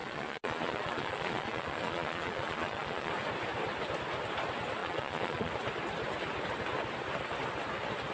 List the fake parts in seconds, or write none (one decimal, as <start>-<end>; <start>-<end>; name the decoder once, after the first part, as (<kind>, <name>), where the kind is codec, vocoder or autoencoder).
0.0-3.1 (vocoder, Vocos); 4.8-5.5